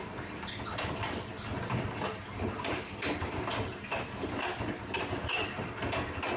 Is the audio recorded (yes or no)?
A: yes